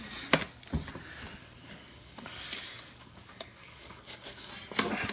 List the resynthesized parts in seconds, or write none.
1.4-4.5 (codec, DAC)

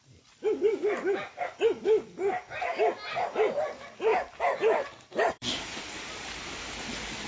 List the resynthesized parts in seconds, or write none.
4.1-7.3 (vocoder, BigVGAN v2)

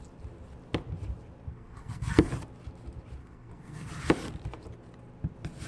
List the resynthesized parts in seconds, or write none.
1.5-2.3 (codec, SNAC); 3.2-3.9

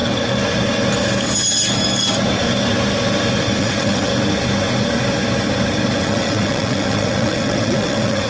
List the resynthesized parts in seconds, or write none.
3.6-4.1 (vocoder, WaveNeXt); 6.0-8.3

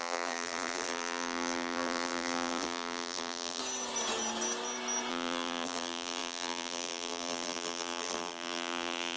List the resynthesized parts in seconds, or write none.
0.0-3.6 (vocoder, BigVGAN v2); 5.1-9.2

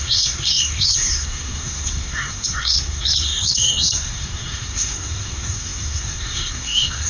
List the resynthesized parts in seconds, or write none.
0.0-7.1 (codec, SNAC)

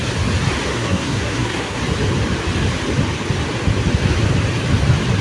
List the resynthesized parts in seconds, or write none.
0.7-1.8 (codec, SNAC)